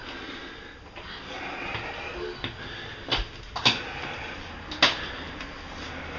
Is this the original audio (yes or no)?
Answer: yes